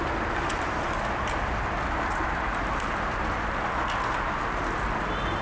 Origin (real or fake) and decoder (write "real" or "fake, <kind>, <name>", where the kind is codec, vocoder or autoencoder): real